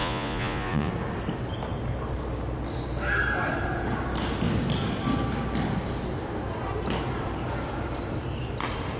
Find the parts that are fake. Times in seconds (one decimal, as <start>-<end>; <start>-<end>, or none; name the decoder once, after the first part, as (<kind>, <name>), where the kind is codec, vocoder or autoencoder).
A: 0.0-0.9 (vocoder, Vocos)